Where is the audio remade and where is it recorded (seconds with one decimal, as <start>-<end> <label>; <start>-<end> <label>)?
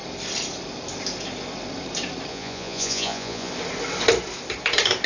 0.0-2.3 recorded; 2.3-3.5 remade; 3.5-5.1 recorded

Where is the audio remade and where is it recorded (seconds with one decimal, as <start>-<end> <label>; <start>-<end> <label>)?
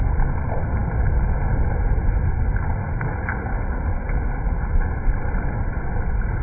0.0-6.4 recorded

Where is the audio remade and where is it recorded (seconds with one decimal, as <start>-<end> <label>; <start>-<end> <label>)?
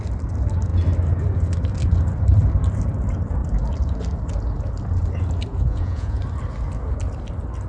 0.0-5.5 recorded; 5.5-6.2 remade; 6.2-7.7 recorded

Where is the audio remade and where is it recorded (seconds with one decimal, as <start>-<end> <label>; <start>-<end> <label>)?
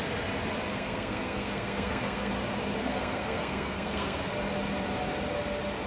0.0-0.7 recorded; 0.7-2.3 remade; 2.3-2.8 recorded; 2.8-4.3 remade; 4.3-5.9 recorded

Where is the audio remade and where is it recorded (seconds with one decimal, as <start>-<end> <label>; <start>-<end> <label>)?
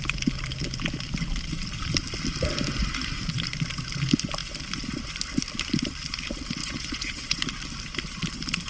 0.0-6.6 recorded; 6.6-7.4 remade; 7.4-8.7 recorded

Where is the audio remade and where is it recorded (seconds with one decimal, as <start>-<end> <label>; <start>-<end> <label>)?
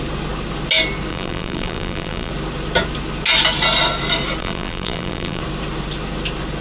0.0-1.1 recorded; 1.1-2.3 remade; 2.3-4.4 recorded; 4.4-5.4 remade; 5.4-6.6 recorded